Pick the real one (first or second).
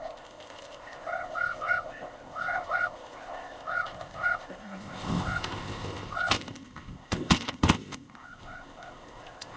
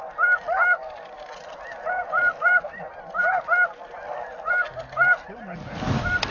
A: second